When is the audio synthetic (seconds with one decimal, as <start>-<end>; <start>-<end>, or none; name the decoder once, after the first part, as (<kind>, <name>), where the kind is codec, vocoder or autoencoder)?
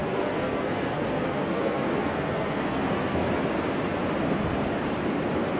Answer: 0.0-3.4 (codec, SNAC)